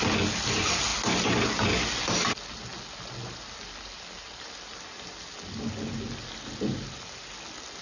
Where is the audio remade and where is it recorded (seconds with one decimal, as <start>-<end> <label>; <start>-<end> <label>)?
0.0-7.8 recorded